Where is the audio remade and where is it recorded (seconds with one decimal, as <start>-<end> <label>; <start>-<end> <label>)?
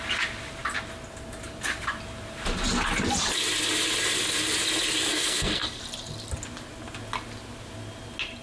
0.0-5.1 recorded; 5.1-5.8 remade; 5.8-8.4 recorded